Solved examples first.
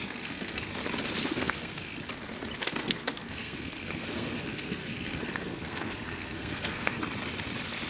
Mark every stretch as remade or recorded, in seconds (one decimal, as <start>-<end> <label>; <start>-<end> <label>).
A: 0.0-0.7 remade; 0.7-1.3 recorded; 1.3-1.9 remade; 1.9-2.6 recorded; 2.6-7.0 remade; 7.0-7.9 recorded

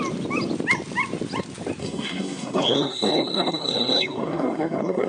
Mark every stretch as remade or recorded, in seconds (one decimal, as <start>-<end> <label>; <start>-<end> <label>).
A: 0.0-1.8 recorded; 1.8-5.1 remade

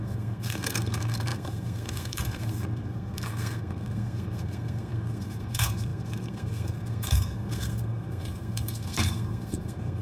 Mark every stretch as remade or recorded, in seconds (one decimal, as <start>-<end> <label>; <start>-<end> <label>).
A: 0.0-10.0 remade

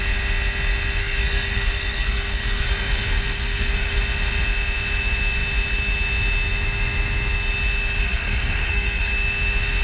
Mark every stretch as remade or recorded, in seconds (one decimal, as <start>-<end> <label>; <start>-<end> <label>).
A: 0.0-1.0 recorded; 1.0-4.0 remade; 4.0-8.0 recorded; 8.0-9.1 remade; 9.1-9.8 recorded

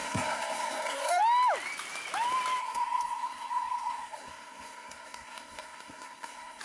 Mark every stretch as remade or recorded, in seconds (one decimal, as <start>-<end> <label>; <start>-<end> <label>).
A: 0.0-1.2 remade; 1.2-2.6 recorded; 2.6-6.6 remade

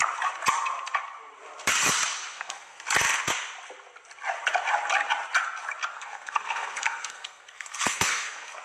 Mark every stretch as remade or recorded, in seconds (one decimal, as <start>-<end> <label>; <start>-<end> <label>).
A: 0.0-2.3 recorded; 2.3-2.8 remade; 2.8-5.9 recorded; 5.9-8.6 remade

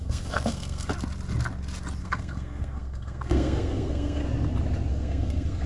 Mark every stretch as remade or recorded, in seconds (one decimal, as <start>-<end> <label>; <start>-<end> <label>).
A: 0.0-0.9 remade; 0.9-2.0 recorded; 2.0-4.2 remade; 4.2-4.9 recorded; 4.9-5.7 remade